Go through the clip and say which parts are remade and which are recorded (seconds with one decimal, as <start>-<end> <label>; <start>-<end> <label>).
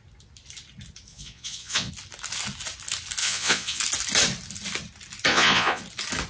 0.0-1.1 recorded; 1.1-1.9 remade; 1.9-3.2 recorded; 3.2-3.8 remade; 3.8-5.3 recorded; 5.3-5.8 remade; 5.8-6.3 recorded